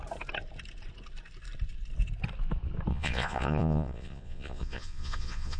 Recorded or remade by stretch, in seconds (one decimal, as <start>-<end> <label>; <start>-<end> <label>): 0.0-2.9 recorded; 2.9-5.6 remade